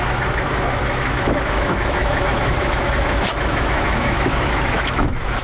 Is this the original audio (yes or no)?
no